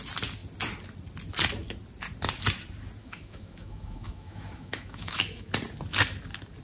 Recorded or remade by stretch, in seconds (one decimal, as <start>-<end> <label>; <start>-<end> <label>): 0.0-3.0 recorded; 3.0-5.5 remade; 5.5-6.6 recorded